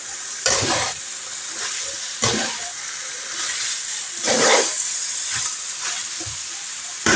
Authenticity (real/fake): fake